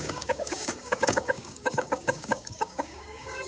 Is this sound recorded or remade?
remade